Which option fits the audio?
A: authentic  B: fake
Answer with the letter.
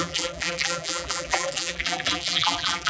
B